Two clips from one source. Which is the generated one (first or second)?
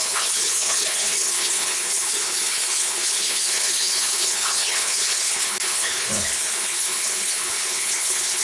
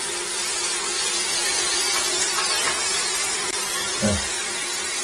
first